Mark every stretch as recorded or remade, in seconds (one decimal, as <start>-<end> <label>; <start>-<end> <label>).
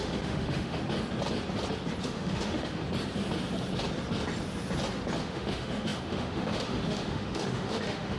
0.0-0.8 remade; 0.8-2.0 recorded; 2.0-2.8 remade; 2.8-5.2 recorded; 5.2-8.2 remade